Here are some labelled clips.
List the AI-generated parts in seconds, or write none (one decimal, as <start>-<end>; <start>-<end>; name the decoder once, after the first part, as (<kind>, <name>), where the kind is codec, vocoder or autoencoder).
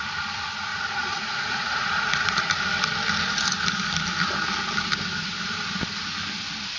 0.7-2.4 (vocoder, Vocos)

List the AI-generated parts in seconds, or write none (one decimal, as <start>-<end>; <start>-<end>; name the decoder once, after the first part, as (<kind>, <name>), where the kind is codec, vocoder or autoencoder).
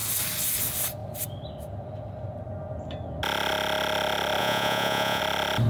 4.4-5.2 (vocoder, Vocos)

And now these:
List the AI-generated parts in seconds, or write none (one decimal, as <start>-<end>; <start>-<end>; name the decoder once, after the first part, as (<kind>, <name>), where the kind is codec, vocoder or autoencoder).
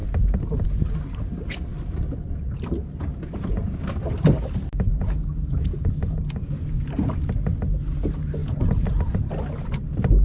4.9-6.5 (vocoder, Vocos); 8.4-9.1